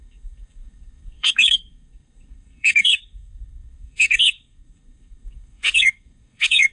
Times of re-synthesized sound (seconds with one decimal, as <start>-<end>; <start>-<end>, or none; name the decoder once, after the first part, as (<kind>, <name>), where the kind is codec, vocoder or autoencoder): 0.0-6.7 (codec, SNAC)